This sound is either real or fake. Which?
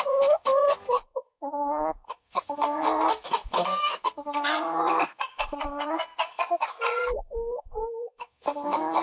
fake